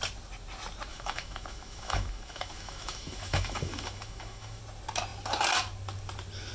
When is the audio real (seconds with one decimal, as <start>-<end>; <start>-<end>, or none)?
0.0-0.9; 4.6-6.5